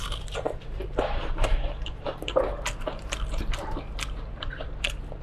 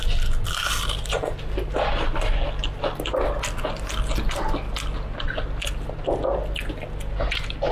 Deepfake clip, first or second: first